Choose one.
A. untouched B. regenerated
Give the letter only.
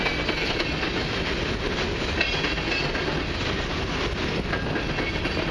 A